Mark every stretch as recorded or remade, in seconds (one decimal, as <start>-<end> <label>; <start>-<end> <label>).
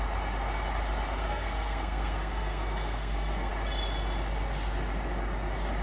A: 0.0-1.2 recorded; 1.2-3.5 remade; 3.5-5.8 recorded